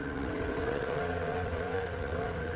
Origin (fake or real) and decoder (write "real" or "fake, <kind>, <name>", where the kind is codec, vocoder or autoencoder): fake, vocoder, WaveNeXt